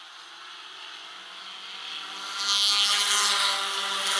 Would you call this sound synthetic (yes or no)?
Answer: no